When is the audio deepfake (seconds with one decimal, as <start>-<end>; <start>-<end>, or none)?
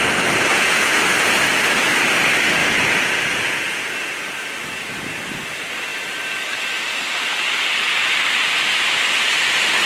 0.5-1.0; 2.6-3.6